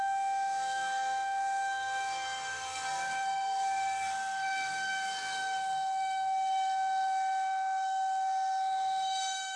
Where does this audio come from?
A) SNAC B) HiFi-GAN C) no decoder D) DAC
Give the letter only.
A